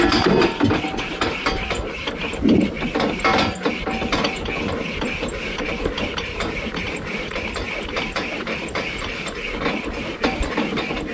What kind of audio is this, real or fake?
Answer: real